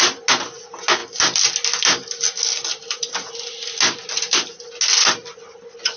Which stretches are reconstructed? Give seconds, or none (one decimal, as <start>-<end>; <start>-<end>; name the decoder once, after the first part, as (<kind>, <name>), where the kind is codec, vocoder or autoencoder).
none